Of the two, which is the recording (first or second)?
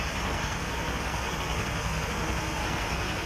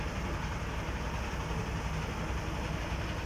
second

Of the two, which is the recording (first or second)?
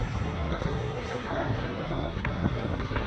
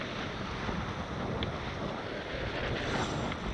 second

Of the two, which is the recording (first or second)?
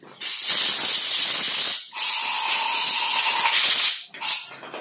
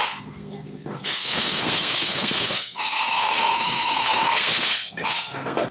first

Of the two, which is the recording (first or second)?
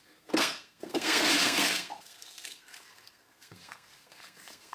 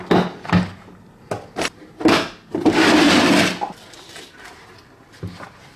second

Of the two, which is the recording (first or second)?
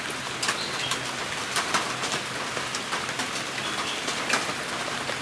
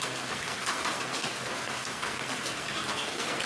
first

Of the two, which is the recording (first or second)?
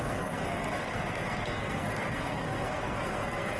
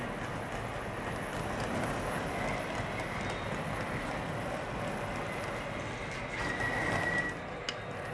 second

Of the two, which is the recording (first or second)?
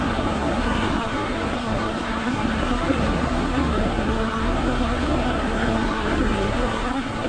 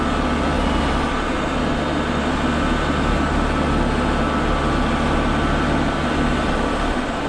second